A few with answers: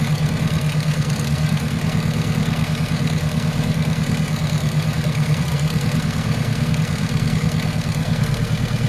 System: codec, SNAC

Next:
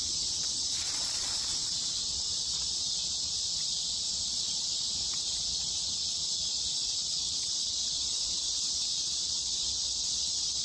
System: vocoder, Vocos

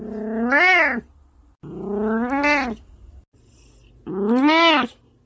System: none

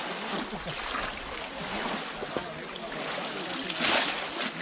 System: none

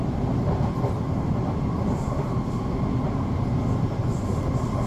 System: none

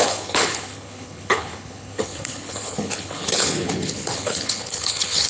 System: codec, HILCodec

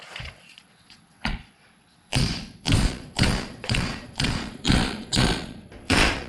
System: vocoder, Vocos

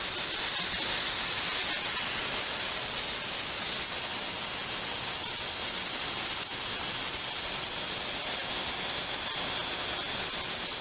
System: none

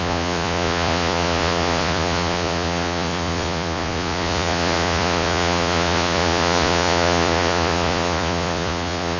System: vocoder, Vocos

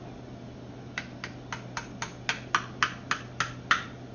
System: none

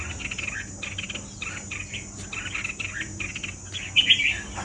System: none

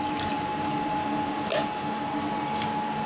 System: none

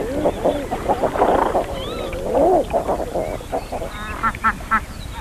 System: none